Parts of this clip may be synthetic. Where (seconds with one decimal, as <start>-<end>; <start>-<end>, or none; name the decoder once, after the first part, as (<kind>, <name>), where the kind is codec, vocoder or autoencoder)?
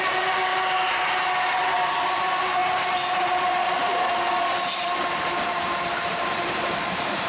0.0-0.5 (vocoder, BigVGAN v2); 1.4-2.6; 3.2-3.9; 6.1-7.3